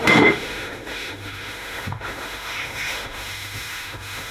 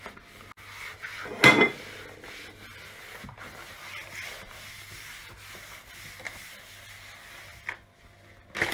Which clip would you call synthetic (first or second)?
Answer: first